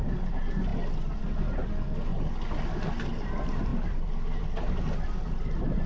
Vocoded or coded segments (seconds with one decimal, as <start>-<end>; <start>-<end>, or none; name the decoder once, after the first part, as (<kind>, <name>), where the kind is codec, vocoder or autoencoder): 0.0-2.1 (vocoder, BigVGAN v2); 3.0-5.9